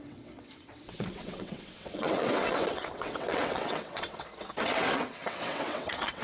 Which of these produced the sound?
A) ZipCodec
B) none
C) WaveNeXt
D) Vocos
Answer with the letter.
C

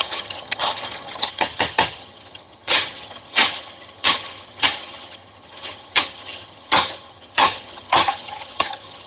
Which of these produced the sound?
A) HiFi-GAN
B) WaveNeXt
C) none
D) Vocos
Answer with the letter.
A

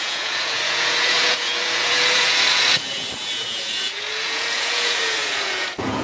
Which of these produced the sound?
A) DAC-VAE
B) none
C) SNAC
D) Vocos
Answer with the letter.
D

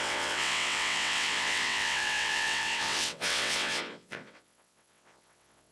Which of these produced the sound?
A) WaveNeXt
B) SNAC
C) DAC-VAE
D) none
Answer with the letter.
A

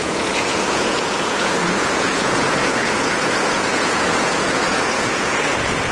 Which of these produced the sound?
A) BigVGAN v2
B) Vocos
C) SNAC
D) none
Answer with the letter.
B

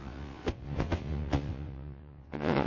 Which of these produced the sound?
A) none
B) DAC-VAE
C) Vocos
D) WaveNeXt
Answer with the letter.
D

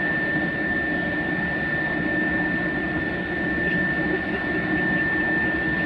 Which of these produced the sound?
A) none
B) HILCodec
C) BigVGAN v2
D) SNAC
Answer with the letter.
A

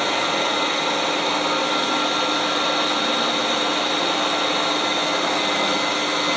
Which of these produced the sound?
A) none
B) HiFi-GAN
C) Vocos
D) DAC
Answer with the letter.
A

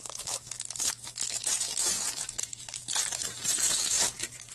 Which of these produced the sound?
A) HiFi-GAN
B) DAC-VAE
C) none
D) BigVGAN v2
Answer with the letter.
B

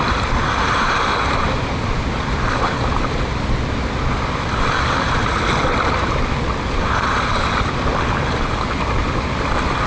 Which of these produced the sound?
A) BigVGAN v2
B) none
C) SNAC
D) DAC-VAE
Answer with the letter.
B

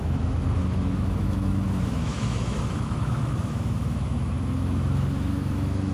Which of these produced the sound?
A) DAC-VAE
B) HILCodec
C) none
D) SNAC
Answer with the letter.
A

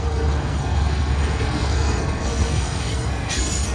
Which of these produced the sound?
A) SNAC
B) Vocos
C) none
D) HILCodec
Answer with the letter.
A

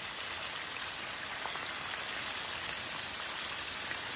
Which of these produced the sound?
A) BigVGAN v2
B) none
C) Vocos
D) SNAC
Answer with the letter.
B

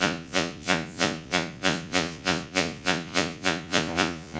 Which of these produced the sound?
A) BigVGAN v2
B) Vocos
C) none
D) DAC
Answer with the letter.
B